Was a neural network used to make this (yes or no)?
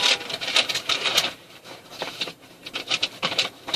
yes